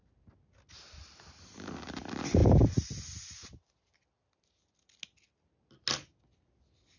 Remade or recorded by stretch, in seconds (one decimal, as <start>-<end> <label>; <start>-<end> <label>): 0.0-7.0 recorded